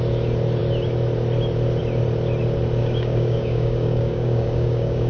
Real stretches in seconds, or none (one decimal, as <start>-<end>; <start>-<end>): 0.0-2.8